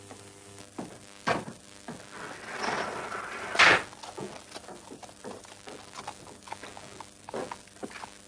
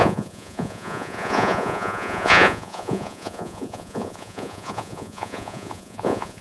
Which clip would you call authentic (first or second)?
first